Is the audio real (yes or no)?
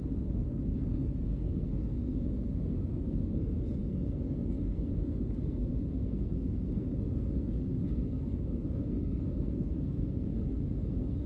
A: no